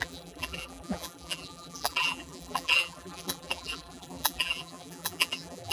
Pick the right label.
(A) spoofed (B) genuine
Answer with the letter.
A